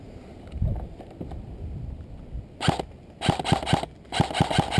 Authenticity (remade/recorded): recorded